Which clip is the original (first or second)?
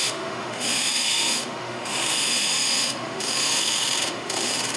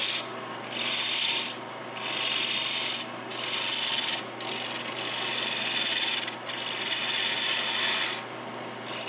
second